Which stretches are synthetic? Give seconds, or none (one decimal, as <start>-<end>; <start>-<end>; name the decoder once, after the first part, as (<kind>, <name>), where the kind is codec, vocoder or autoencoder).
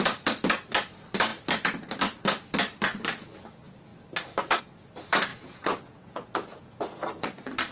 5.3-7.0 (vocoder, Vocos)